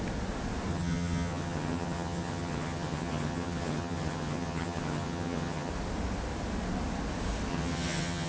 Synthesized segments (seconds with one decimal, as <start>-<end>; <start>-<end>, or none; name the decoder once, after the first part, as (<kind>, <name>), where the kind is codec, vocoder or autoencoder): 0.7-5.7 (vocoder, HiFi-GAN); 7.5-8.3